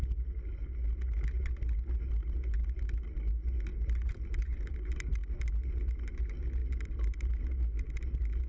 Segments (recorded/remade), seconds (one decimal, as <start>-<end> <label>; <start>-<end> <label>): 0.0-3.7 recorded; 3.7-4.7 remade; 4.7-6.6 recorded; 6.6-7.4 remade; 7.4-8.5 recorded